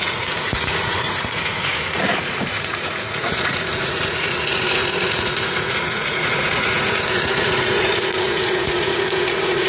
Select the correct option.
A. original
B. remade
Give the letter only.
B